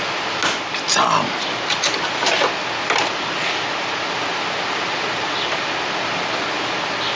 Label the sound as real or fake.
real